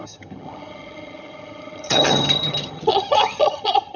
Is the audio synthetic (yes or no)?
yes